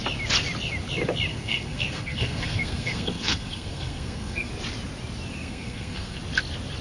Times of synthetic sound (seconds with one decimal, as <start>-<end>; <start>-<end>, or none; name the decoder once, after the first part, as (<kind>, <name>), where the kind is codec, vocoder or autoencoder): 1.3-4.5 (codec, SNAC); 5.3-6.2